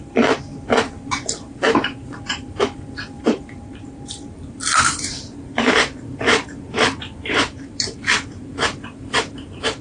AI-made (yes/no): yes